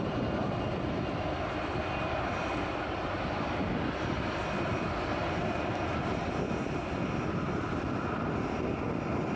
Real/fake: real